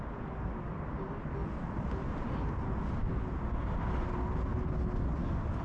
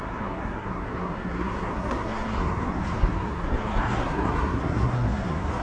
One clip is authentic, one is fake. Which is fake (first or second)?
second